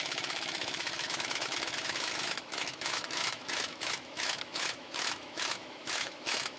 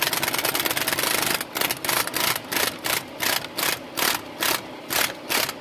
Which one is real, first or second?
second